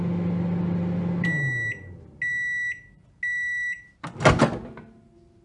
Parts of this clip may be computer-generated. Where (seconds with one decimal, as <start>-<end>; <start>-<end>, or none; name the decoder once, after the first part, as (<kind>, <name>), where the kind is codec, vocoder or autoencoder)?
none